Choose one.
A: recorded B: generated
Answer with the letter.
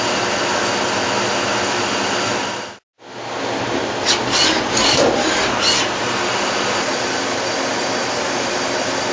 A